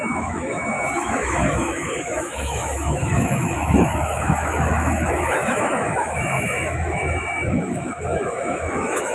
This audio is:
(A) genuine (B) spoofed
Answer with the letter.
B